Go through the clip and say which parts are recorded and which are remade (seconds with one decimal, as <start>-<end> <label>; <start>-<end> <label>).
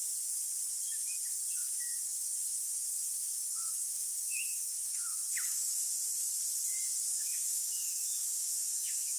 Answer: 0.0-1.6 recorded; 1.6-5.9 remade; 5.9-7.1 recorded; 7.1-9.2 remade